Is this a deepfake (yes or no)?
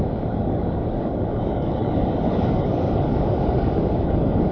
yes